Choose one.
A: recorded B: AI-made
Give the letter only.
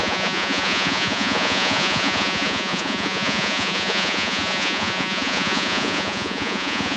B